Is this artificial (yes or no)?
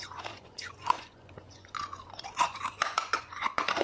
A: yes